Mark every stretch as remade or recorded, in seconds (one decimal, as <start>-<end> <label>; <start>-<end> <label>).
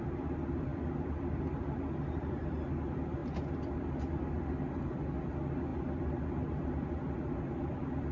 0.0-8.1 remade